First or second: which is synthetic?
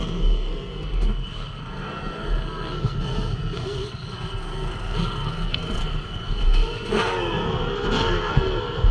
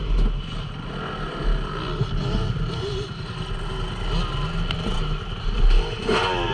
first